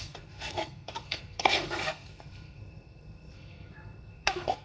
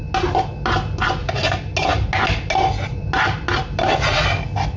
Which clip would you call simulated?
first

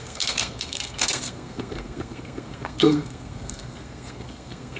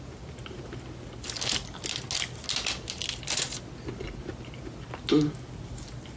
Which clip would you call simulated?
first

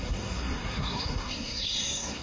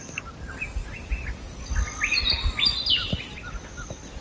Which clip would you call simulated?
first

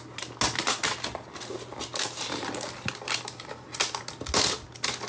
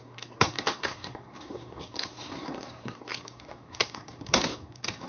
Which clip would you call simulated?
second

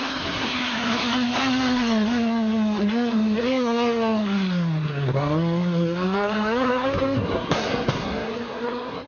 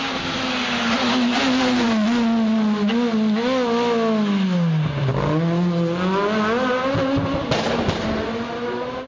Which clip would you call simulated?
first